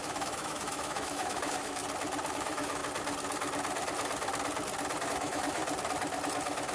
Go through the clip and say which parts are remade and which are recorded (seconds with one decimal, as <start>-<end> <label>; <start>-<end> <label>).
0.0-1.8 remade; 1.8-2.3 recorded; 2.3-2.8 remade; 2.8-5.1 recorded; 5.1-5.6 remade; 5.6-6.7 recorded